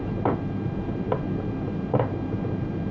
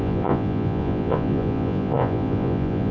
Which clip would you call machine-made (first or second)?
second